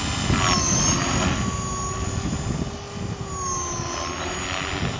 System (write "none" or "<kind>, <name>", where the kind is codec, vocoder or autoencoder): none